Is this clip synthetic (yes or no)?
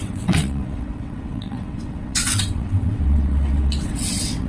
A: yes